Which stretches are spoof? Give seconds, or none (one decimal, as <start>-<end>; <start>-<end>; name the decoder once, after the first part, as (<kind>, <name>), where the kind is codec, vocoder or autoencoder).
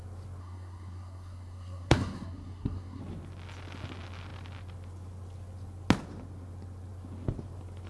0.4-3.0 (codec, SNAC)